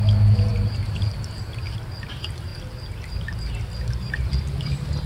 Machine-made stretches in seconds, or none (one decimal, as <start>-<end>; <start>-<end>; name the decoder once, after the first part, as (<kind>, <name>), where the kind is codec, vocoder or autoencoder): 0.0-2.5 (vocoder, BigVGAN v2); 4.1-5.1